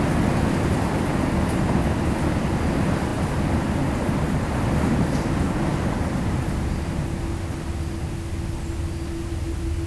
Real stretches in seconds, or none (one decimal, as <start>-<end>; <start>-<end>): 0.0-9.9